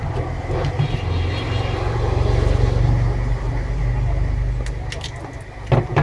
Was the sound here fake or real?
real